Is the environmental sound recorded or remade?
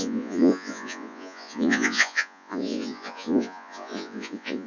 remade